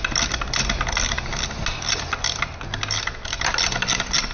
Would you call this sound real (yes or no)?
yes